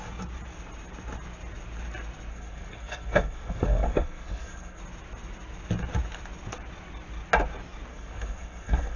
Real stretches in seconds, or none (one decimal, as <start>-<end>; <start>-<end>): 0.0-2.3; 4.8-7.9